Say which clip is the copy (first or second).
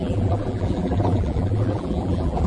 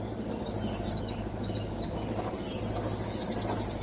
first